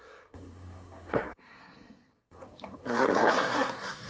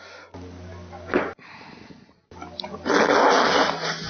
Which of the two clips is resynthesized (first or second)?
first